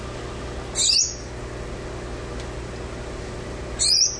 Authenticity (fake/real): real